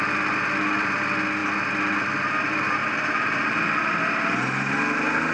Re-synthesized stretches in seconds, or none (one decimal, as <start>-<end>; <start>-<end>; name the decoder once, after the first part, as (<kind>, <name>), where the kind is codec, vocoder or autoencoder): 2.8-3.4 (vocoder, BigVGAN v2)